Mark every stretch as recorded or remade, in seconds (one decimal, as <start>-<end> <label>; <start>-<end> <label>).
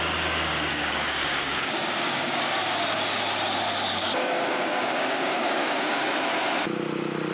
0.0-0.7 recorded; 0.7-2.5 remade; 2.5-4.0 recorded; 4.0-6.0 remade; 6.0-7.3 recorded